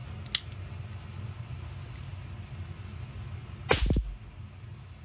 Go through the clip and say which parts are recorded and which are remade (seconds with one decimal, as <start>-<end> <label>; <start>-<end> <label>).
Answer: 0.0-5.0 recorded